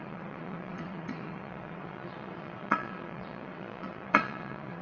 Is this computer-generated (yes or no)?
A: yes